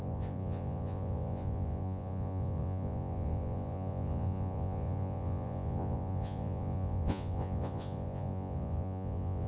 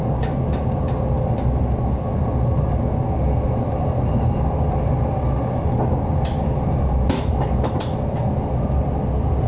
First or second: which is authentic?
second